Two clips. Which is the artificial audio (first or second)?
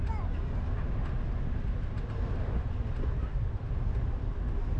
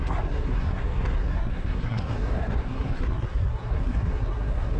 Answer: second